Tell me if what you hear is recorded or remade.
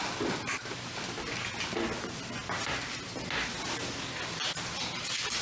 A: recorded